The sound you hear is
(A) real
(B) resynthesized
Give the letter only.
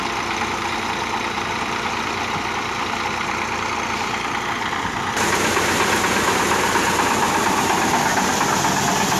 A